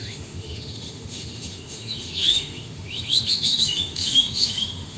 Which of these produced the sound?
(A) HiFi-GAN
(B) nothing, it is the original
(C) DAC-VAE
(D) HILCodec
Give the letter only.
C